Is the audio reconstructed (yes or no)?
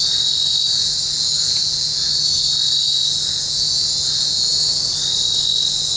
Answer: yes